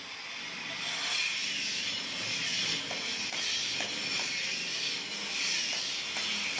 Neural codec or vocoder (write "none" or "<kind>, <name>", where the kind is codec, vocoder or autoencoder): none